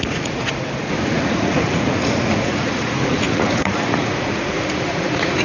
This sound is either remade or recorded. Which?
remade